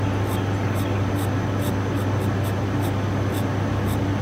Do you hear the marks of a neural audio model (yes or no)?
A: no